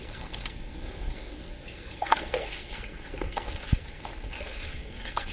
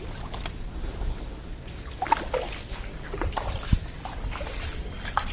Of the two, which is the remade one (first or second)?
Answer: first